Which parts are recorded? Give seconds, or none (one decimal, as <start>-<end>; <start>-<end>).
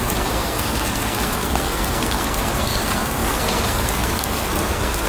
none